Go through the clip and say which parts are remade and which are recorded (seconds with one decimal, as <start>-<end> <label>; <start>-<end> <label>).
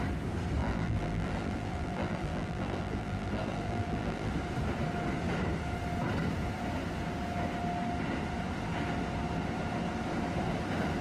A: 0.0-0.6 recorded; 0.6-4.3 remade; 4.3-11.0 recorded